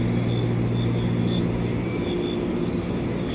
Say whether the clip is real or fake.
real